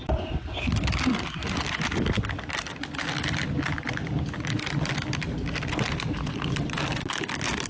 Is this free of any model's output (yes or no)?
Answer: yes